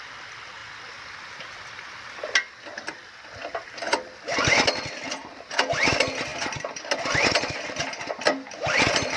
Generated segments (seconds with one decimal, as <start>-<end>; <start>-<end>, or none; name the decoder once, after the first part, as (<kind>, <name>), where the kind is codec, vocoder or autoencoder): none